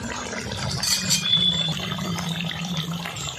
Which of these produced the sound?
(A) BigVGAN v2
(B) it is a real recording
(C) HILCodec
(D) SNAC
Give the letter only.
A